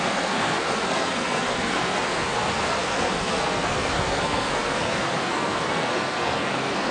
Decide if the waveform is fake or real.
fake